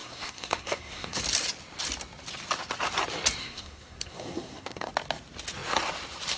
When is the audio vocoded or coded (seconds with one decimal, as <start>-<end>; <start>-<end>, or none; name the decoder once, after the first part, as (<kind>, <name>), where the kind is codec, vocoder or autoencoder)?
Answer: 0.0-1.2 (codec, SNAC); 3.4-4.9